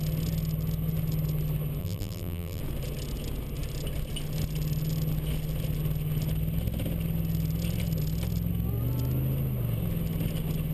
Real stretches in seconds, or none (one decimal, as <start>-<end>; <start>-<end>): 0.0-1.8; 2.6-10.7